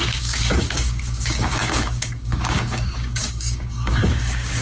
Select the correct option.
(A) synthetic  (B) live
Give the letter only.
A